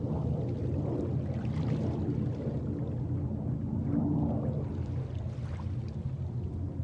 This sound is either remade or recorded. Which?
recorded